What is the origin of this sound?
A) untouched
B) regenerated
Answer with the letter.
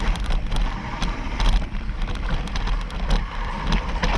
B